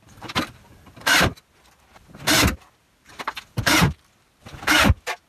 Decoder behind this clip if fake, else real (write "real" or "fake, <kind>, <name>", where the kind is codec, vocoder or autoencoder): real